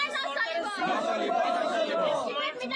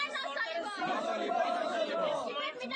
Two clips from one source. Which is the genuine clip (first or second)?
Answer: first